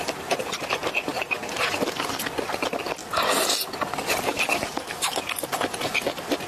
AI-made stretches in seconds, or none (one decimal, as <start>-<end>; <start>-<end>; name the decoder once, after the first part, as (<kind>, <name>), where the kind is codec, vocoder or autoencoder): 4.3-5.1 (vocoder, BigVGAN v2)